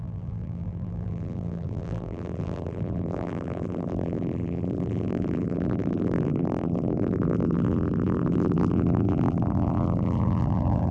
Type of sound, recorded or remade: remade